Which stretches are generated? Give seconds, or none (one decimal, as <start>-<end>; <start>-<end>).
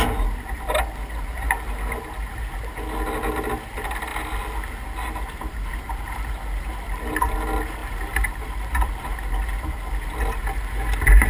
5.7-6.3; 7.8-8.5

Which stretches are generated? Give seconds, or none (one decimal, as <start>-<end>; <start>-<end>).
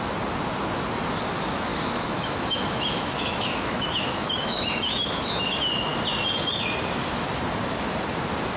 1.7-5.5